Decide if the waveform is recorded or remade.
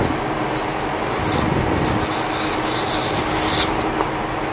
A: recorded